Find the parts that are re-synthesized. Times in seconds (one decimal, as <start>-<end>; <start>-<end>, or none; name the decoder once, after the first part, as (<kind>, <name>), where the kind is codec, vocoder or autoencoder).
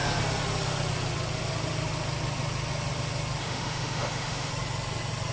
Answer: 3.4-4.5 (autoencoder, DAC-VAE)